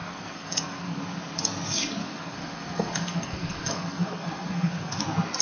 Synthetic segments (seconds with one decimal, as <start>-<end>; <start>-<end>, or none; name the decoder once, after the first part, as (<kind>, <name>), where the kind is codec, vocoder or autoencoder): 0.0-1.0 (codec, SNAC); 2.0-5.0